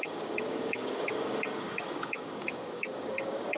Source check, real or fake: fake